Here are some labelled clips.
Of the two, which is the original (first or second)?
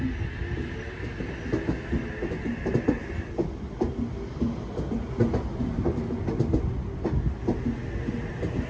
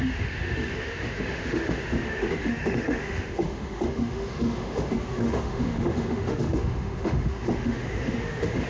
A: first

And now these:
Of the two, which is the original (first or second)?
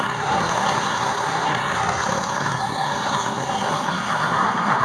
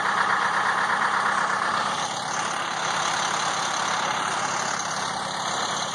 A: second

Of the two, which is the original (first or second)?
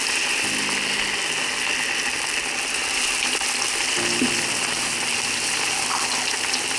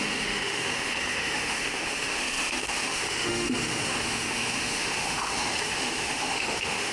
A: first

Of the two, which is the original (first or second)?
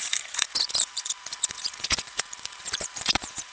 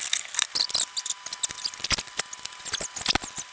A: second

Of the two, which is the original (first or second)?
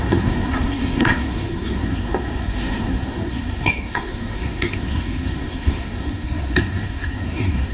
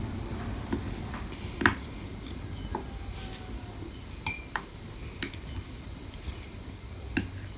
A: second